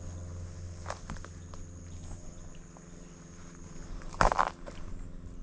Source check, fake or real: real